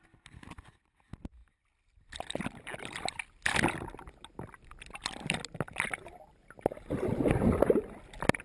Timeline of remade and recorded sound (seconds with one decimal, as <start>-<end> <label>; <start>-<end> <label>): 0.0-8.4 recorded